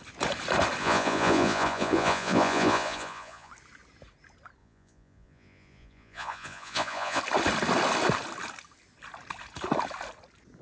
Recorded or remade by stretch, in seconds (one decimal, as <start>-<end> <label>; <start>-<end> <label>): 0.0-0.8 recorded; 0.8-3.5 remade; 3.5-4.6 recorded; 4.6-7.2 remade; 7.2-10.6 recorded